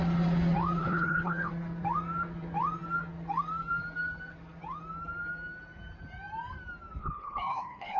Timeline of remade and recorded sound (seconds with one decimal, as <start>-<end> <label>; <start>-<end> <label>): 0.0-0.8 recorded; 0.8-1.5 remade; 1.5-7.0 recorded; 7.0-8.0 remade

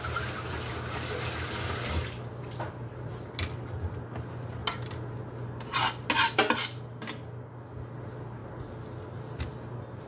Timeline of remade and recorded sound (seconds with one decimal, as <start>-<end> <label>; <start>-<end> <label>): 0.0-10.1 recorded

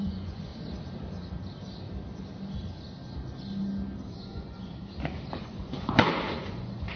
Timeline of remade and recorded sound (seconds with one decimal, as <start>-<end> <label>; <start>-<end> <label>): 0.0-0.5 remade; 0.5-4.1 recorded; 4.1-4.7 remade; 4.7-5.4 recorded; 5.4-7.0 remade

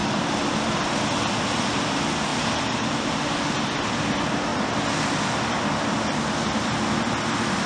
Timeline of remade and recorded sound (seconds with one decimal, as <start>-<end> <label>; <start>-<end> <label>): 0.0-0.5 remade; 0.5-2.3 recorded; 2.3-3.3 remade; 3.3-7.7 recorded

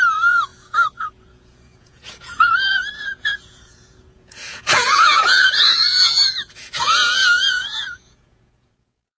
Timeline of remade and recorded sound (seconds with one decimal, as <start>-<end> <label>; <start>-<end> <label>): 0.0-9.2 remade

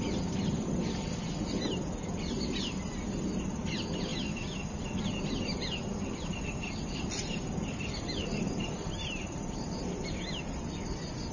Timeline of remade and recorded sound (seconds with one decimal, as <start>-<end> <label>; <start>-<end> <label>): 0.0-11.3 recorded

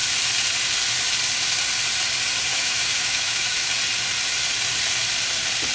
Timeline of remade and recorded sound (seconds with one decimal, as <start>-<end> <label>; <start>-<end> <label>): 0.0-2.5 recorded; 2.5-3.7 remade; 3.7-5.7 recorded